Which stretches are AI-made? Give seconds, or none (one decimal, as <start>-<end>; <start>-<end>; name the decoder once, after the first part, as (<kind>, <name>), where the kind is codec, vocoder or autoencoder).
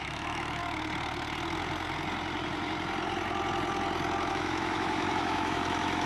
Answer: 0.0-0.6 (autoencoder, DAC-VAE); 4.3-6.1